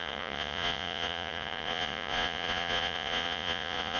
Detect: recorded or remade remade